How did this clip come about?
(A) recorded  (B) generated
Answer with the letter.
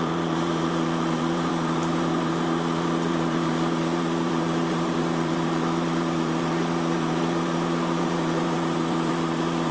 B